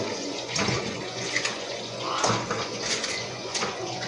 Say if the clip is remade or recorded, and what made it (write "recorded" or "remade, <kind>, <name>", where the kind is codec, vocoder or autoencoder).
remade, vocoder, Vocos